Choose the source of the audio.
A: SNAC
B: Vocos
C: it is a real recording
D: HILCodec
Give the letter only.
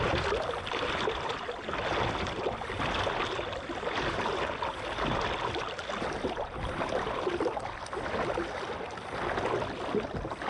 C